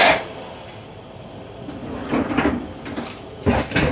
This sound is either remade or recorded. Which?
recorded